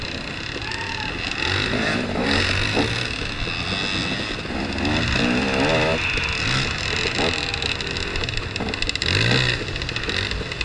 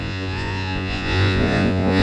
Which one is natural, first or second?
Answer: first